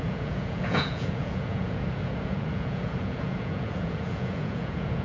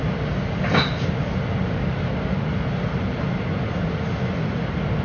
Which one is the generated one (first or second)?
first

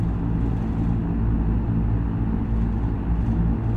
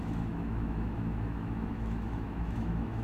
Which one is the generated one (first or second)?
second